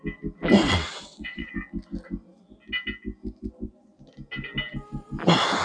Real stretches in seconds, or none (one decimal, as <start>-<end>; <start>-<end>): 0.0-0.6; 1.5-5.6